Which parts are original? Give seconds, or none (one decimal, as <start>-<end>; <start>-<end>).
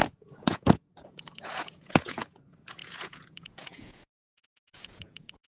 none